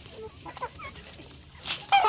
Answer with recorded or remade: remade